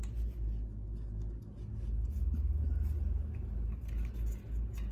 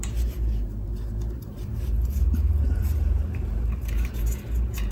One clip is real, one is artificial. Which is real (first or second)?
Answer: first